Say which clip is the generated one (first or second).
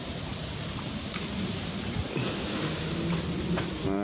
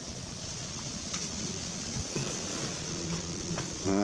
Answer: second